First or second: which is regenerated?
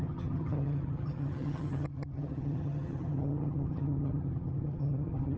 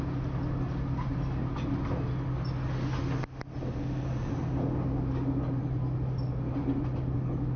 first